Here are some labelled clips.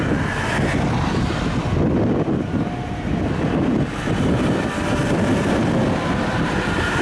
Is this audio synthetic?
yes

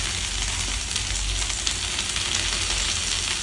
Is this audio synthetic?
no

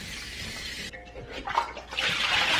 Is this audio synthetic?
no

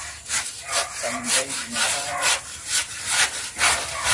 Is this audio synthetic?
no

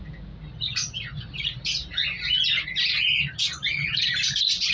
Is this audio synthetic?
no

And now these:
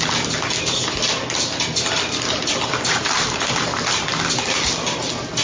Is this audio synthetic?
no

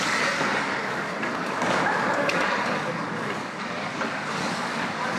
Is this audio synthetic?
yes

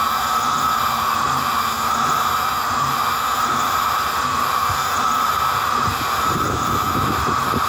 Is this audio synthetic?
no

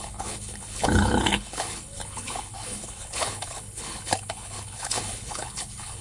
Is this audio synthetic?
yes